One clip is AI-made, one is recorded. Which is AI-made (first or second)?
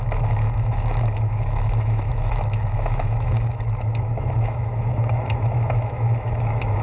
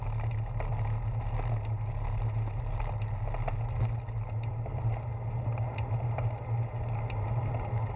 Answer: first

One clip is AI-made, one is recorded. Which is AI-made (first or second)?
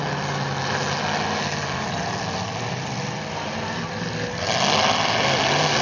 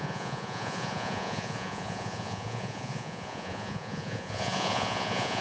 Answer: second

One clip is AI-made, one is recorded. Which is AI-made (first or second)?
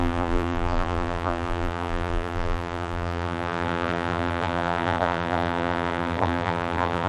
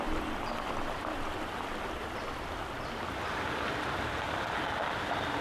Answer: first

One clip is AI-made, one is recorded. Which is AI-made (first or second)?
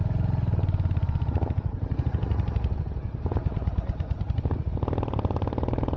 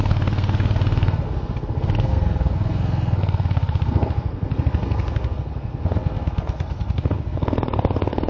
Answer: second